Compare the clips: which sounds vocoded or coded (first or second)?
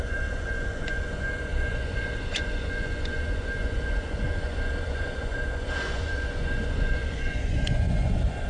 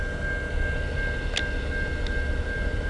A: first